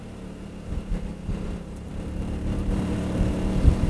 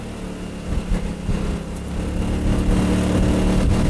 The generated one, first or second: first